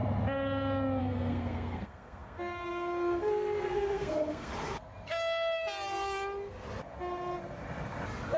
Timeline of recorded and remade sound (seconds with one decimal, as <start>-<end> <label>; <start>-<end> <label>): 0.0-1.0 recorded; 1.0-4.5 remade; 4.5-8.4 recorded